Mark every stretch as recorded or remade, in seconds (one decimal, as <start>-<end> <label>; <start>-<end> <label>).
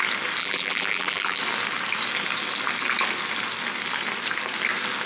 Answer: 0.0-0.4 recorded; 0.4-1.4 remade; 1.4-5.1 recorded